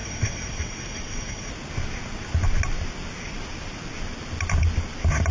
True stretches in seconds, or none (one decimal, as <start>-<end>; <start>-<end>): 1.5-5.3